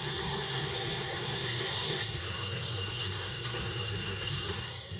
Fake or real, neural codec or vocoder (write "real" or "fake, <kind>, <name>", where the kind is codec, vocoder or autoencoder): fake, codec, SNAC